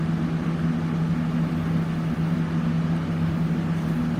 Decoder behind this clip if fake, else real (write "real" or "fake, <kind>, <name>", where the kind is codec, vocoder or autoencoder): real